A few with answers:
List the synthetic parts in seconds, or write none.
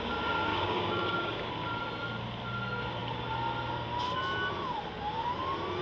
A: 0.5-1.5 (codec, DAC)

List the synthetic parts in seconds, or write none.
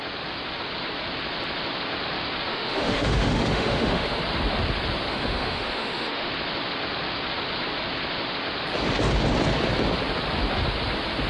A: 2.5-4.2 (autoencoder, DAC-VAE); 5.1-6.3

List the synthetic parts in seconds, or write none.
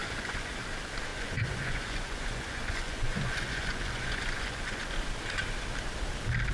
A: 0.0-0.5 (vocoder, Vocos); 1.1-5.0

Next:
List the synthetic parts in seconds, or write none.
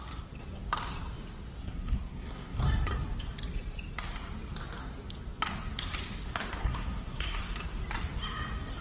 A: 1.6-2.6 (codec, SNAC); 6.6-7.4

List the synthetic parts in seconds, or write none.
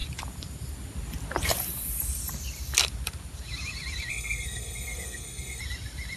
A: 4.1-5.6 (codec, SNAC)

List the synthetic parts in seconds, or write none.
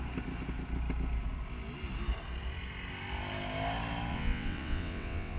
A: 4.1-5.4 (vocoder, WaveNeXt)